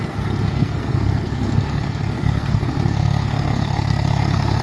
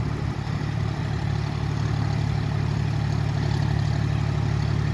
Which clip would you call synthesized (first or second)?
first